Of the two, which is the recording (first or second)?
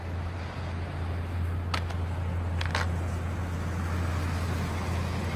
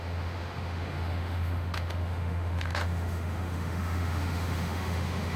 first